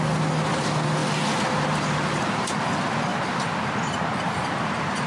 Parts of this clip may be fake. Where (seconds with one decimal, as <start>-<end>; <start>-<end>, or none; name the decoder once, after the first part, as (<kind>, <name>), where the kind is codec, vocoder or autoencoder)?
none